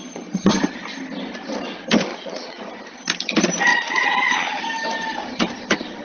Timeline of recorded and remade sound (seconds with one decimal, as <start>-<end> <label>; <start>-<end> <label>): 0.0-2.1 recorded; 2.1-2.6 remade; 2.6-3.7 recorded; 3.7-4.6 remade; 4.6-6.0 recorded